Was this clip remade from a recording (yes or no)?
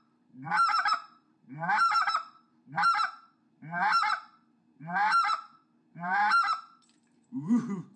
yes